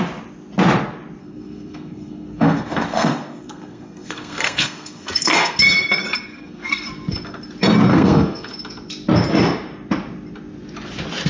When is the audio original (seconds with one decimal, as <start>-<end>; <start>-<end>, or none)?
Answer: 0.0-1.2; 5.6-6.3; 6.9-7.9; 8.5-11.3